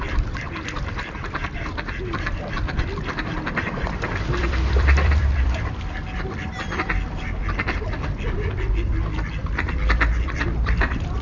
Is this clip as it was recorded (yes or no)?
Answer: no